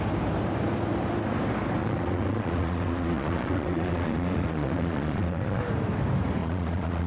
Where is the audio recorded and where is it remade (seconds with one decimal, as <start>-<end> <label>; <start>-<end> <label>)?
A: 0.0-1.8 recorded; 1.8-5.6 remade; 5.6-6.4 recorded; 6.4-7.1 remade